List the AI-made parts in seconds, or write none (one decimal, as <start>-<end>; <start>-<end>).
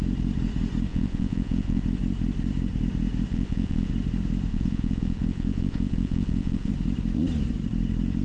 0.9-1.8; 3.3-3.9; 4.5-6.7